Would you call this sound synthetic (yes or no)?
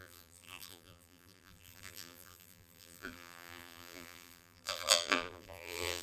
yes